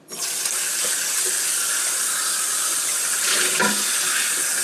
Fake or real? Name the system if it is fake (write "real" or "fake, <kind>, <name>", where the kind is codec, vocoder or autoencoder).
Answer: real